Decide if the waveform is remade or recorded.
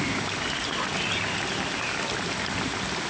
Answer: recorded